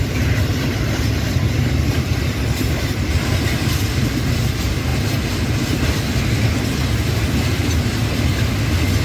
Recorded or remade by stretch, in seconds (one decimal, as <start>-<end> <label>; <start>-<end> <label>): 0.0-9.0 recorded